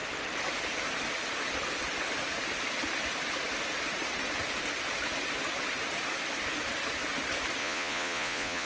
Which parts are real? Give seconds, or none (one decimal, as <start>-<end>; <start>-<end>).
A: 0.0-7.6